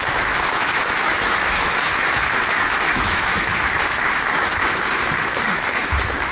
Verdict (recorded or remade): remade